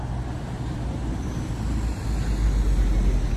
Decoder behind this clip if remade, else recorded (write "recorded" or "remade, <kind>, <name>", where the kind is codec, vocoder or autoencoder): recorded